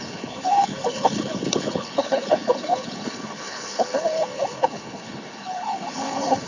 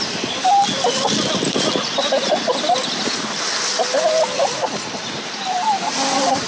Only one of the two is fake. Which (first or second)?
first